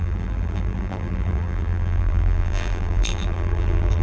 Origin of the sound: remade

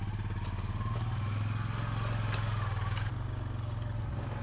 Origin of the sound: recorded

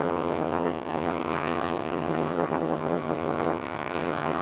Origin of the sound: remade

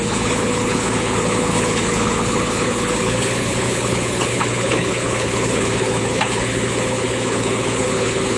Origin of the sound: remade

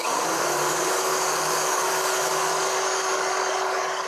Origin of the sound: remade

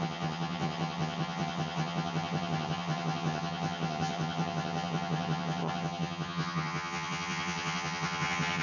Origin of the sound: remade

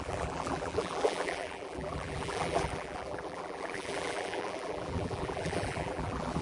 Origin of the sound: remade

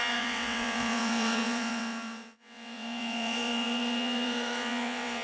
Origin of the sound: remade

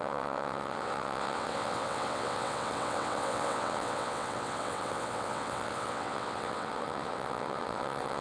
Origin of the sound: remade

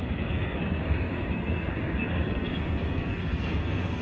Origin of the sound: remade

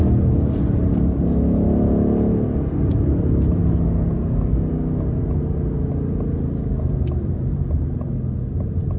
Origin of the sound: recorded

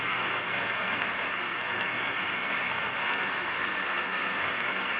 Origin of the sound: remade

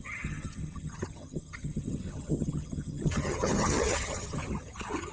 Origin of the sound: remade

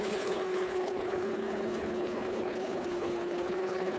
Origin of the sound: remade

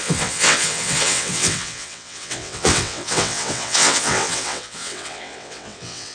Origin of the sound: remade